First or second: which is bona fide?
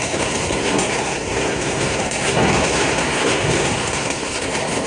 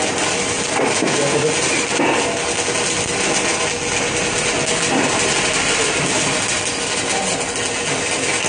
second